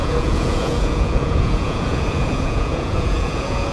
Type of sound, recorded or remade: remade